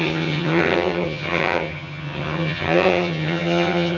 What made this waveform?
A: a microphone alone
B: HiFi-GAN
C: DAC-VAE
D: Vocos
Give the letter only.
B